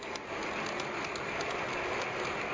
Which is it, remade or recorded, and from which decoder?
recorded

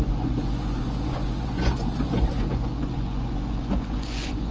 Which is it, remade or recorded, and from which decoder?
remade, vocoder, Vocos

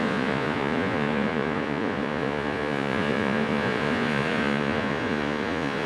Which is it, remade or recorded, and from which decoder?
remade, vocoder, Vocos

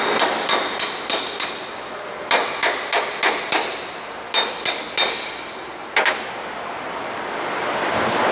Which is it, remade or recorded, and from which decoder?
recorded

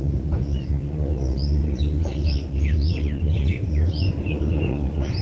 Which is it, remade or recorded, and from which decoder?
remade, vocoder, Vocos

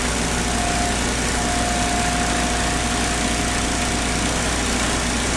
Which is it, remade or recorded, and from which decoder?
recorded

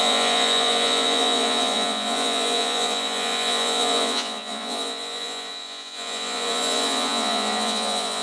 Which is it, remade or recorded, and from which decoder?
remade, vocoder, Vocos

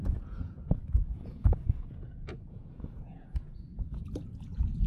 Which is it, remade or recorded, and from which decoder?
remade, vocoder, Vocos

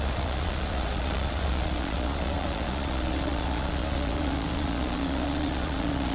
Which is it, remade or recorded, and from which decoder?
remade, vocoder, Vocos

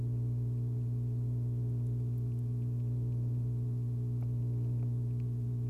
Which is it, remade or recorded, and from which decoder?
remade, vocoder, Vocos